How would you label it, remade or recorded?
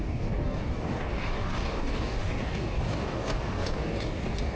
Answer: remade